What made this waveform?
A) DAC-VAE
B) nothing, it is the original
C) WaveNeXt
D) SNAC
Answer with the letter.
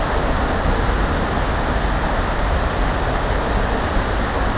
B